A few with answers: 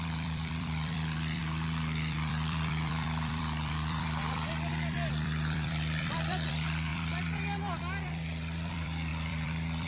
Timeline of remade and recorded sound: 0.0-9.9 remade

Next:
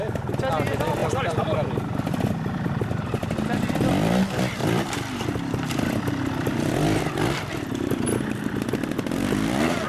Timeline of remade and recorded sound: 0.0-1.0 recorded; 1.0-2.3 remade; 2.3-4.6 recorded; 4.6-9.9 remade

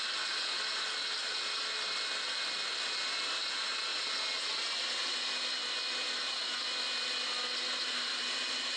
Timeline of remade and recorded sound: 0.0-8.8 recorded

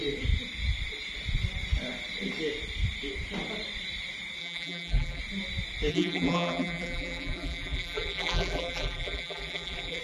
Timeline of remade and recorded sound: 0.0-4.4 recorded; 4.4-5.2 remade; 5.2-5.9 recorded; 5.9-10.0 remade

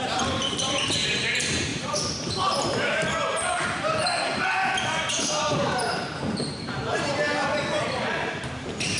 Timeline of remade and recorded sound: 0.0-7.1 remade; 7.1-7.8 recorded; 7.8-9.0 remade